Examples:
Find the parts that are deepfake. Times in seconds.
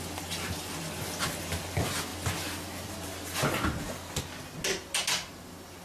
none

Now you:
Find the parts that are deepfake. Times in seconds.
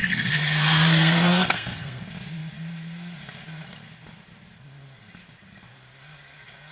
0.0-2.0 (codec, SNAC)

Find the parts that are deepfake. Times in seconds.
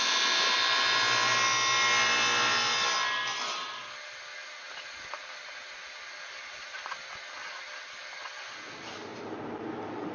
none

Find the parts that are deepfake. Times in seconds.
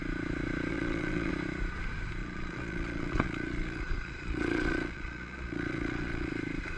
0.7-1.3 (vocoder, Vocos); 2.2-6.3